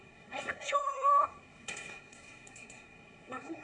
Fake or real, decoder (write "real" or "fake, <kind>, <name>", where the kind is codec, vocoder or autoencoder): fake, codec, SNAC